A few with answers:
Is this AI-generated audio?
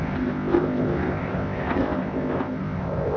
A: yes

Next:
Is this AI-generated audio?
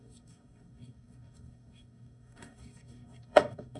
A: yes